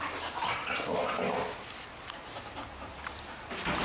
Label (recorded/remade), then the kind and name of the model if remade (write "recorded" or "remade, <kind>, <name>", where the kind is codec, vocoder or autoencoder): recorded